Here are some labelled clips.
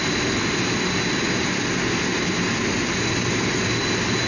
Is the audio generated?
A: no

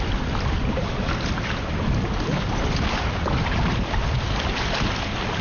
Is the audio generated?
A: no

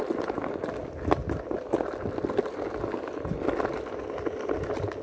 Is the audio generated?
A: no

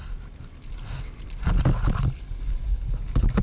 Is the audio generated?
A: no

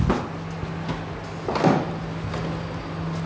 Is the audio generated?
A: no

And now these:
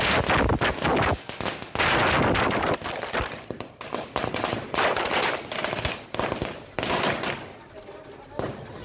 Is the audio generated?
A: no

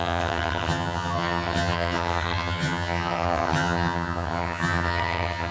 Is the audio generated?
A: yes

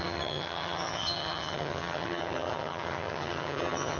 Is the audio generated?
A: yes